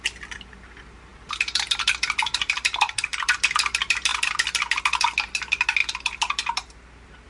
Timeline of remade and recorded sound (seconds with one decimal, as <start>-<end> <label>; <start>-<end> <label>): 0.0-1.1 recorded; 1.1-3.3 remade; 3.3-7.3 recorded